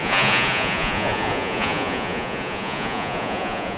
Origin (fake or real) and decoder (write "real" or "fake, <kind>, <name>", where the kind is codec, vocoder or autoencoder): fake, vocoder, Vocos